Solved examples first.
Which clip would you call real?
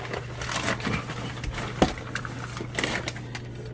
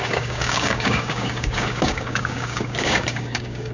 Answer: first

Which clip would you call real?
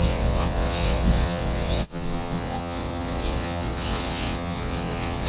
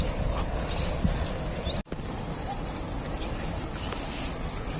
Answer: second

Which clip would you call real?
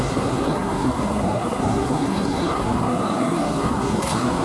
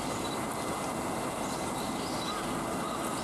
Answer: second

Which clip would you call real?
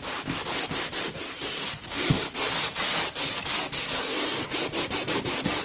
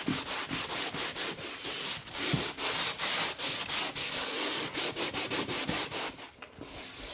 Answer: second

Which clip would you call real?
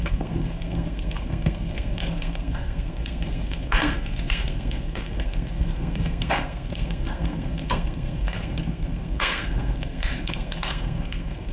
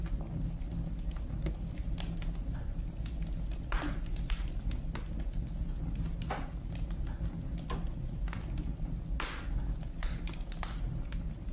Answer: second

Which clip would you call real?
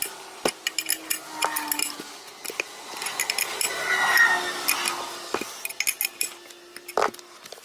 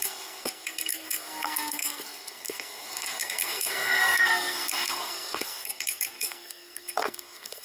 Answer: first